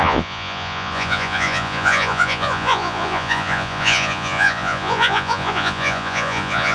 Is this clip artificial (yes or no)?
yes